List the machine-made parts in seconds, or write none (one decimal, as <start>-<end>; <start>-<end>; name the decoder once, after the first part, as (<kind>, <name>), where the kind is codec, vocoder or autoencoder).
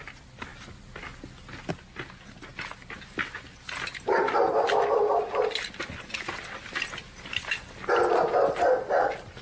none